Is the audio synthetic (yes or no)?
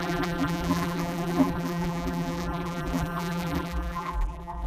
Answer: yes